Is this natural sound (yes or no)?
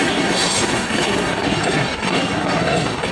no